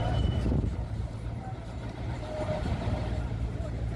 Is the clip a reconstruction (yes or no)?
yes